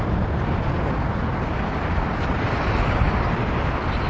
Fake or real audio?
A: real